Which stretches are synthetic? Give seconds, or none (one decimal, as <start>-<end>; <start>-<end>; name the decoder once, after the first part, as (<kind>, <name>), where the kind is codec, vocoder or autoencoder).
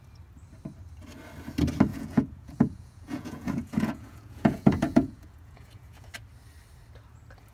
1.9-6.1 (vocoder, Vocos)